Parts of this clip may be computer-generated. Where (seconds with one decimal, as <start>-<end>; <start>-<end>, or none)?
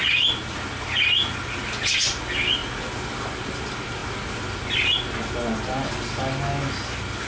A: none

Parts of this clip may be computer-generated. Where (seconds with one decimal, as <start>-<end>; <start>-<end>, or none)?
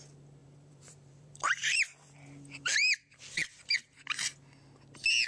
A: 0.4-3.6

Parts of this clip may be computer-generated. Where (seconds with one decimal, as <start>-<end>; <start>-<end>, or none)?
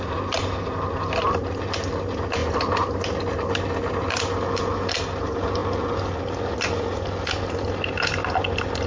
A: none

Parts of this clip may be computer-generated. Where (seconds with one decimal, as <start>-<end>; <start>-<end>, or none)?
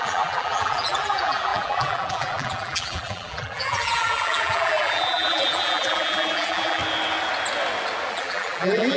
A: 0.0-6.8; 8.1-9.0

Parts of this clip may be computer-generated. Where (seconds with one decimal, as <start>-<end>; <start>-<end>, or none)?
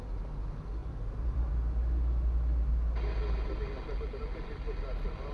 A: 0.8-1.5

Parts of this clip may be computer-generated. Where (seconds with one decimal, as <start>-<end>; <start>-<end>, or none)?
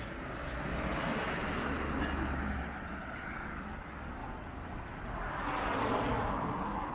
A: none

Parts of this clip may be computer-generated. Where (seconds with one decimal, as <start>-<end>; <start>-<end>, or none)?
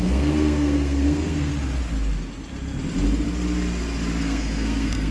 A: 0.0-1.5; 4.2-5.1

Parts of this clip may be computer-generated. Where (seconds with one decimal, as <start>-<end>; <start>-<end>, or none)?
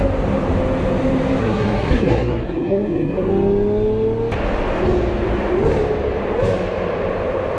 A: 1.4-3.3